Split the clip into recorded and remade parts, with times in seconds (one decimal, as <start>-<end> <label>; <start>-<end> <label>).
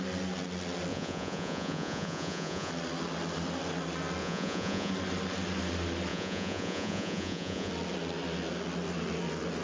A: 0.0-0.9 recorded; 0.9-2.7 remade; 2.7-4.2 recorded; 4.2-4.9 remade; 4.9-6.1 recorded; 6.1-7.7 remade; 7.7-9.6 recorded